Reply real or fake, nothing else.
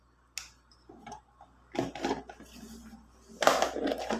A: real